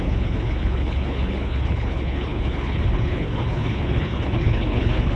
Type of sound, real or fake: fake